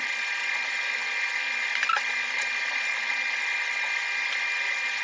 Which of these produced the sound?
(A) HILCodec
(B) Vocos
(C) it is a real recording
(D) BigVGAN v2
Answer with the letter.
C